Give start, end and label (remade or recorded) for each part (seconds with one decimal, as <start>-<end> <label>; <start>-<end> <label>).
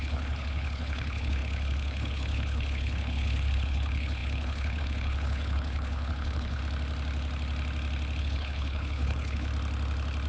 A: 0.0-6.6 remade; 6.6-8.2 recorded; 8.2-9.5 remade; 9.5-10.3 recorded